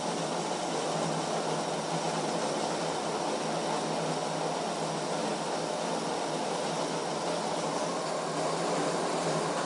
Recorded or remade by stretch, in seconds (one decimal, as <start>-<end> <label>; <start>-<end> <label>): 0.0-9.7 recorded